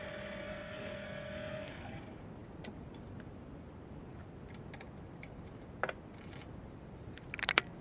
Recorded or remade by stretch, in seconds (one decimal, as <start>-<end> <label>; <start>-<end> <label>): 0.0-0.4 recorded; 0.4-2.0 remade; 2.0-7.8 recorded